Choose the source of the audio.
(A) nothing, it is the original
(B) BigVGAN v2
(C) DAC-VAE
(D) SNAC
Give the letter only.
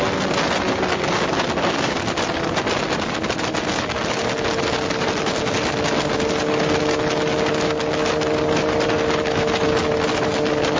A